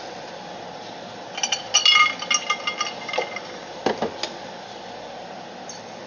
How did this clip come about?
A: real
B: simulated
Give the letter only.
A